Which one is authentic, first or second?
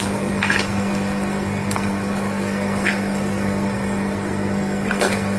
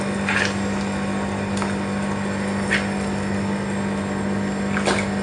second